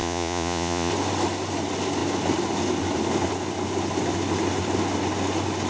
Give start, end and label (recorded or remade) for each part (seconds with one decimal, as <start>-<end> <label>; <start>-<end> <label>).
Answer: 0.0-0.9 remade; 0.9-5.7 recorded